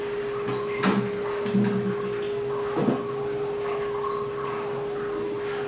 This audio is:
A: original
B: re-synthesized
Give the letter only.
A